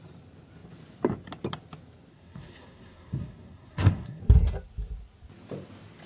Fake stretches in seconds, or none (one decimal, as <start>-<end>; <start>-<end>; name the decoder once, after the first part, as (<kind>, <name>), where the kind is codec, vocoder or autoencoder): 2.1-4.2 (codec, SNAC)